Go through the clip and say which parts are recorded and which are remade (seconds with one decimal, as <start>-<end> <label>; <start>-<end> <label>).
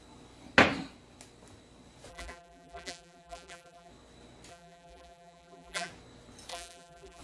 0.0-2.1 recorded; 2.1-3.9 remade; 3.9-4.5 recorded; 4.5-5.9 remade; 5.9-6.5 recorded; 6.5-7.2 remade